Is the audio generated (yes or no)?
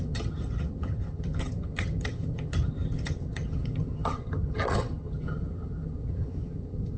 yes